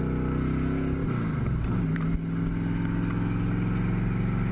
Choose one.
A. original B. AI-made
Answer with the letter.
A